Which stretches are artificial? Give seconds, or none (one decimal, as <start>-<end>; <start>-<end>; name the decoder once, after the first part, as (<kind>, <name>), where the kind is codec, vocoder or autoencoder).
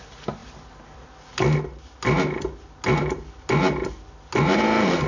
none